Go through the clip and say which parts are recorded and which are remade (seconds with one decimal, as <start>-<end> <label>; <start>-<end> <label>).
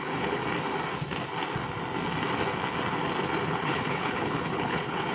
0.0-0.4 remade; 0.4-3.5 recorded; 3.5-5.1 remade